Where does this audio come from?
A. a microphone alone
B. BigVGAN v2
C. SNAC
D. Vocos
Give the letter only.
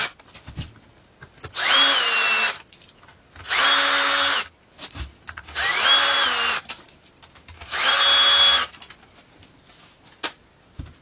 A